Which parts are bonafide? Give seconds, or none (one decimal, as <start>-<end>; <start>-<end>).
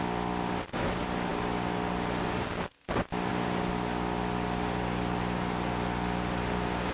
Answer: 0.0-6.9